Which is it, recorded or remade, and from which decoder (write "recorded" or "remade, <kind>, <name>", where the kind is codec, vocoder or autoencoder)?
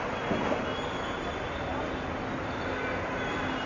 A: recorded